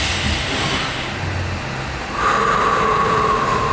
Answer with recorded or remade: recorded